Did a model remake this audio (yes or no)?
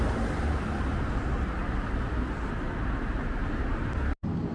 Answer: no